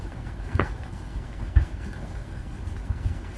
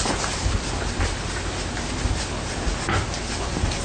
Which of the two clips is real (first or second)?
second